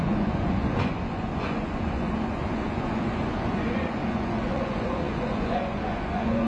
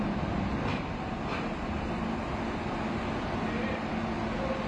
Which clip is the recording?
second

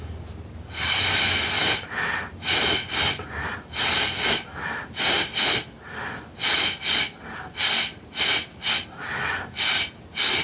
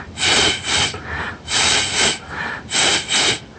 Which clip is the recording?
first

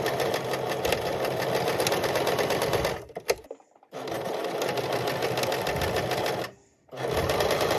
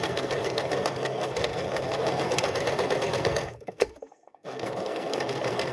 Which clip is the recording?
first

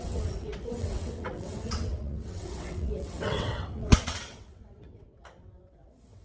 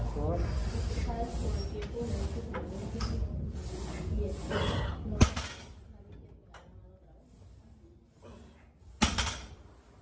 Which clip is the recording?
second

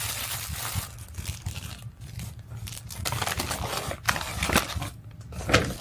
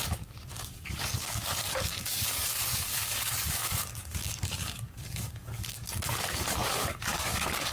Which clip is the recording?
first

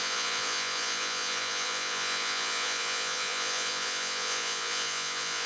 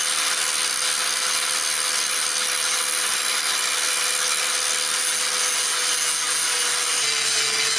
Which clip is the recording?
second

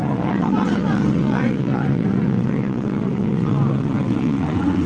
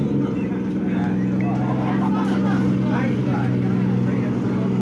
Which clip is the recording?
second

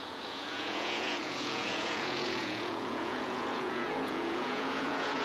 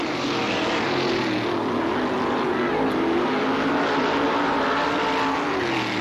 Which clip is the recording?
second